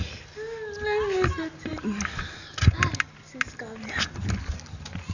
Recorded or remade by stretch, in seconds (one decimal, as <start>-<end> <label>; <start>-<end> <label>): 0.0-5.1 recorded